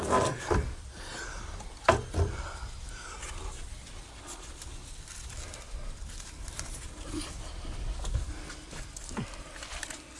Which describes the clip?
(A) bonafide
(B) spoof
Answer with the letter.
A